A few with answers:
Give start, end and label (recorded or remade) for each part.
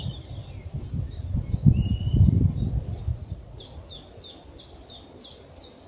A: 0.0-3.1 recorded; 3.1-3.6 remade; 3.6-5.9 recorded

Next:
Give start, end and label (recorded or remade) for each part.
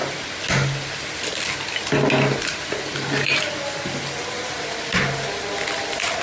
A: 0.0-6.2 recorded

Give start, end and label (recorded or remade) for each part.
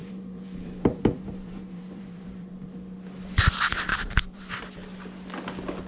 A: 0.0-2.5 remade; 2.5-3.9 recorded; 3.9-4.5 remade; 4.5-5.9 recorded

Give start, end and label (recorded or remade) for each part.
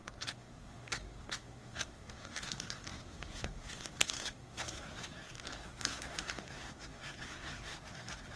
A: 0.0-8.4 remade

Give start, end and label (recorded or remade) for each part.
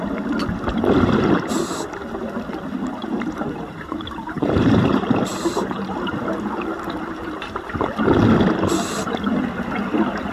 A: 0.0-3.0 recorded; 3.0-7.8 remade; 7.8-10.3 recorded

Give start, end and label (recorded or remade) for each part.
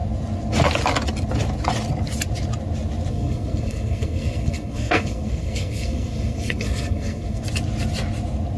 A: 0.0-3.1 recorded; 3.1-7.4 remade; 7.4-8.6 recorded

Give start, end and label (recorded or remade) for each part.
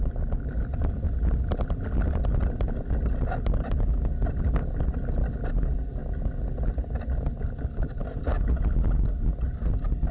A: 0.0-10.1 recorded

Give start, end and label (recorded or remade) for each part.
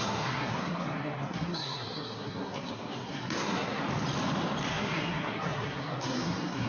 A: 0.0-3.8 remade; 3.8-4.7 recorded; 4.7-6.7 remade